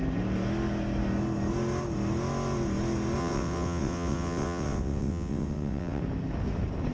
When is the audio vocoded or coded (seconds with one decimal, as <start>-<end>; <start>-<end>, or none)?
3.2-6.0